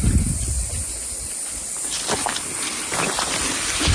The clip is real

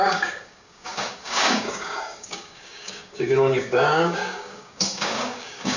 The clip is fake